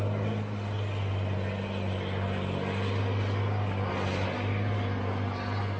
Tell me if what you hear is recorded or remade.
recorded